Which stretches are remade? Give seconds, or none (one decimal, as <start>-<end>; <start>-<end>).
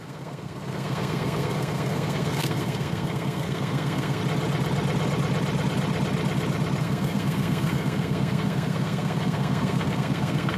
0.0-4.2; 6.8-10.6